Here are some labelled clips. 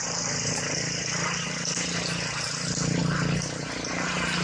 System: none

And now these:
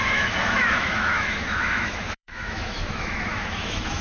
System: autoencoder, DAC-VAE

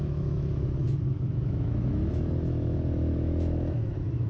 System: autoencoder, DAC-VAE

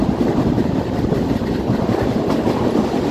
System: none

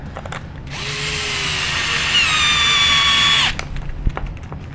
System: none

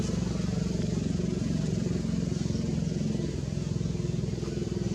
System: none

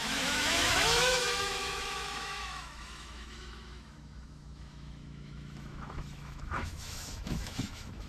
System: autoencoder, DAC-VAE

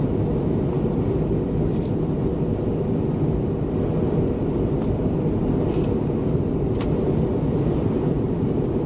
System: none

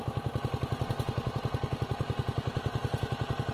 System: none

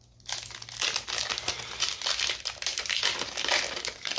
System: none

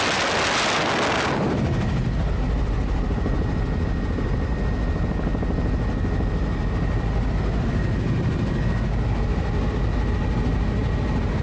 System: none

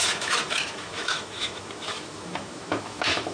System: autoencoder, DAC-VAE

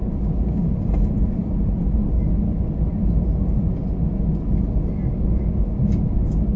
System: none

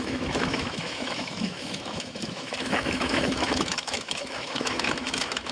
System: autoencoder, DAC-VAE